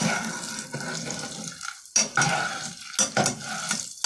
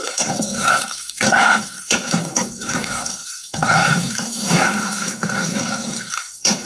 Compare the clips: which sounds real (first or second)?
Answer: first